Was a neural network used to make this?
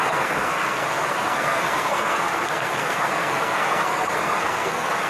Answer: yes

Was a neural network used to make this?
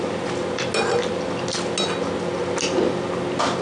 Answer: no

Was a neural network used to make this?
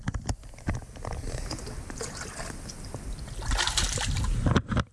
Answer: no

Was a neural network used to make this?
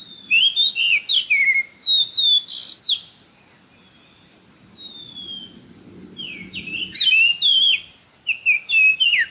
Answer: no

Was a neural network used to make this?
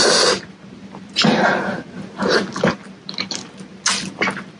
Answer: no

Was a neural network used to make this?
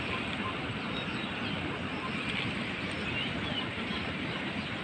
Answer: no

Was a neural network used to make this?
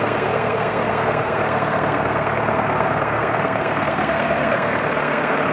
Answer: yes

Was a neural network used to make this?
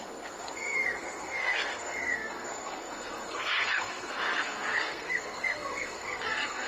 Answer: yes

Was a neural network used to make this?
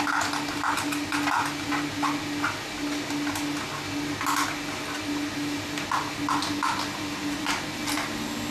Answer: no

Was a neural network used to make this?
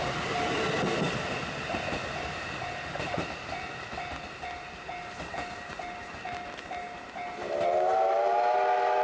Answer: no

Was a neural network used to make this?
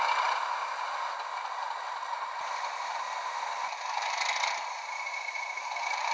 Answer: no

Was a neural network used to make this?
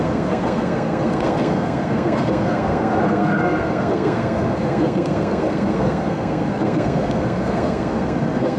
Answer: yes